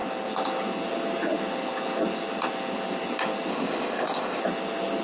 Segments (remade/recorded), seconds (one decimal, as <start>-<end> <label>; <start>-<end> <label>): 0.0-3.5 recorded; 3.5-4.4 remade; 4.4-5.0 recorded